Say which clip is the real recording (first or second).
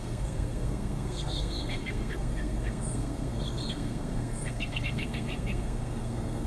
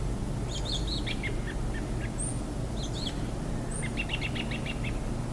second